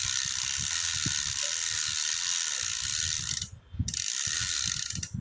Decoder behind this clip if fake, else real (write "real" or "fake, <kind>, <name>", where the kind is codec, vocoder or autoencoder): real